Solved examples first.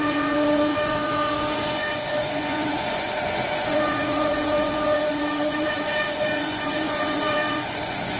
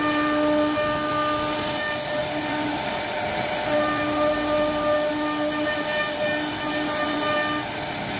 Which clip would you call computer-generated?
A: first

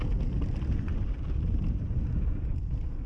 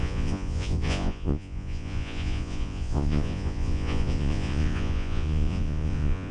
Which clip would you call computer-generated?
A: second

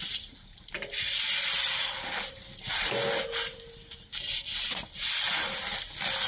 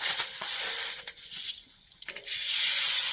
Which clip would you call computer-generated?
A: second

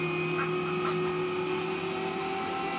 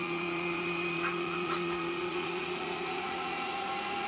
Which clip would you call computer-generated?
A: second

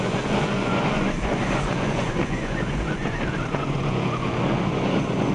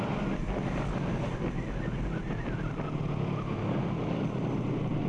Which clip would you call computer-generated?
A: first